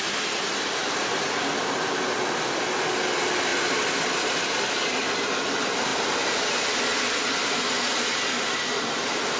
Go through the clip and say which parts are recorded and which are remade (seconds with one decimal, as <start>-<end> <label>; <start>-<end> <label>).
0.0-9.4 recorded